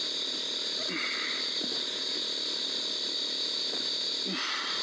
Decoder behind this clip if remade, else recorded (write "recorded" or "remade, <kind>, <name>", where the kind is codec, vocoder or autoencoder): recorded